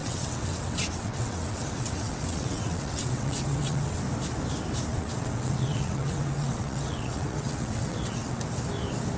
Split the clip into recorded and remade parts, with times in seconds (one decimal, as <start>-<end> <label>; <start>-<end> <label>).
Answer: 0.0-4.0 remade; 4.0-4.9 recorded; 4.9-8.4 remade; 8.4-9.2 recorded